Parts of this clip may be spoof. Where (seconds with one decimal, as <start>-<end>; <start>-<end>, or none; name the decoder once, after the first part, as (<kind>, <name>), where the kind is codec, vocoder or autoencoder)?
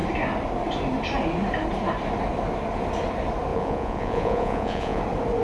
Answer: 3.5-5.0 (vocoder, Vocos)